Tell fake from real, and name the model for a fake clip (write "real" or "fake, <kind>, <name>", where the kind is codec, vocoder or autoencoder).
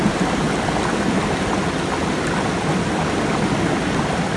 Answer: real